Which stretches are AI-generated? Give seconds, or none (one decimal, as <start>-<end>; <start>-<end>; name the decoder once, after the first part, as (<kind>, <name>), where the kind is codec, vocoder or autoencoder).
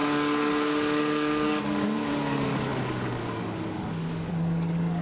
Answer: 0.0-5.0 (codec, DAC)